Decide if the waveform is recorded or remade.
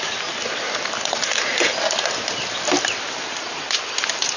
recorded